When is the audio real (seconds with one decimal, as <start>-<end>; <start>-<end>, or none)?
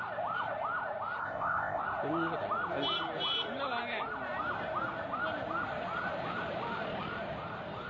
0.0-1.2; 1.8-7.9